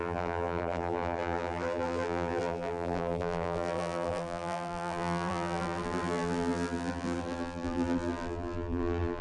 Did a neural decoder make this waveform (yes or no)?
yes